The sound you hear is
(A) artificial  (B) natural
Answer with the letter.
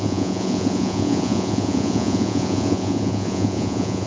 A